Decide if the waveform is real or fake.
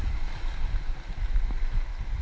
real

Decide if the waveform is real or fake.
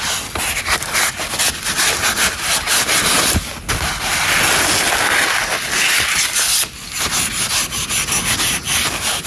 real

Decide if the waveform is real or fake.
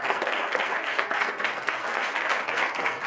fake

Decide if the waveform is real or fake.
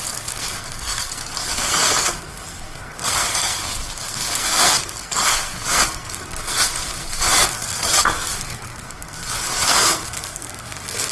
fake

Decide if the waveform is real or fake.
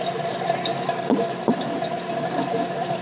real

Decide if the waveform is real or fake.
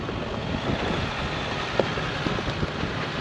real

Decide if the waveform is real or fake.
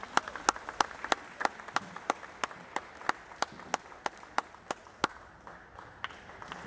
real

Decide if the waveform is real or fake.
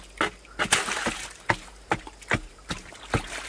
real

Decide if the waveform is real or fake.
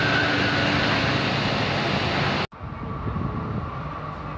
real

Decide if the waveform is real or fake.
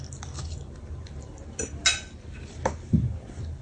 real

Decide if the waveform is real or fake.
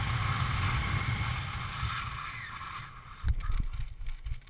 real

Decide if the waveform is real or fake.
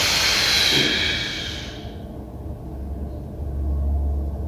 real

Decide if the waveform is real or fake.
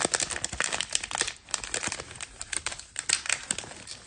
real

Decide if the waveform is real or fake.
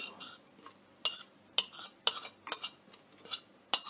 real